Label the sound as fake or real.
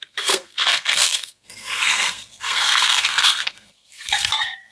fake